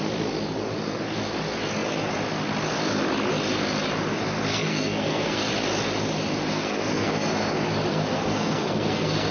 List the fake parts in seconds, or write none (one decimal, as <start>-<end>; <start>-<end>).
4.5-5.5; 6.5-7.3; 7.9-9.3